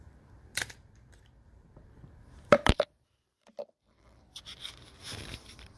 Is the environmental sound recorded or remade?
remade